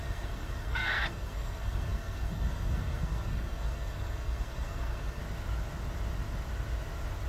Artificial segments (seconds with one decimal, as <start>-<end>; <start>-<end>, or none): 0.0-5.2